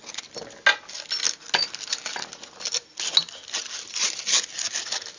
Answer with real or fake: real